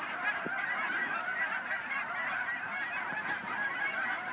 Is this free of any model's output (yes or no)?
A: no